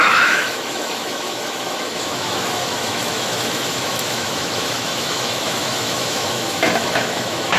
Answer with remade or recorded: remade